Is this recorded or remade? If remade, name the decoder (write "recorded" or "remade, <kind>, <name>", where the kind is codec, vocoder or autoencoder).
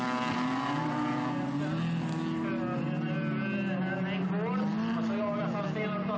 recorded